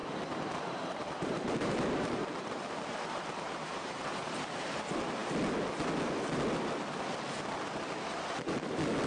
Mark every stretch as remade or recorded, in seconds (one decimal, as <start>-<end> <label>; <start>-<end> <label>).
0.0-4.8 remade; 4.8-9.1 recorded